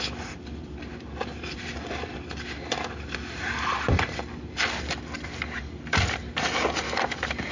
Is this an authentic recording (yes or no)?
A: no